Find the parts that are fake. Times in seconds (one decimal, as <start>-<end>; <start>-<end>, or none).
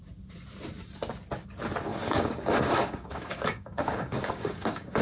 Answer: 1.9-5.0